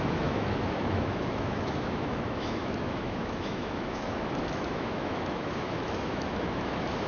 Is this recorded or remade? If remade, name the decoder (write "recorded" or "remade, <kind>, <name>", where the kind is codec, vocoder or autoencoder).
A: remade, autoencoder, DAC-VAE